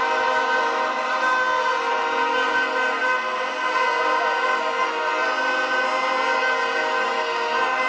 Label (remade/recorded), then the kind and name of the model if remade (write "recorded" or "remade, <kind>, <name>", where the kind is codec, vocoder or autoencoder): recorded